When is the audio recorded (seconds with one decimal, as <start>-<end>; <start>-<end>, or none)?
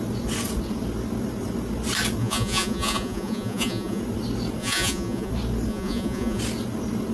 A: 0.0-2.2; 4.0-4.6; 5.3-5.7; 6.4-7.1